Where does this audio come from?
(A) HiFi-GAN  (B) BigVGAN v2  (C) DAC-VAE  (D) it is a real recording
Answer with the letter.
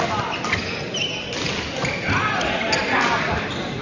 D